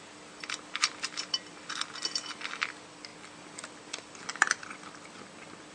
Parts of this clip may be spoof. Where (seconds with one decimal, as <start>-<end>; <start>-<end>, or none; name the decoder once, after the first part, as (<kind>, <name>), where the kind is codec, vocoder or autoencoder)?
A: none